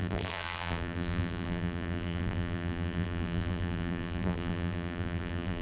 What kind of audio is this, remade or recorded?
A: remade